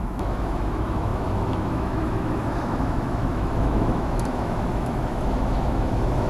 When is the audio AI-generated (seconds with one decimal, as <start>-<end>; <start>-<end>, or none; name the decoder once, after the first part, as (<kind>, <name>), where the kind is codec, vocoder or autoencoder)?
0.0-6.3 (autoencoder, DAC-VAE)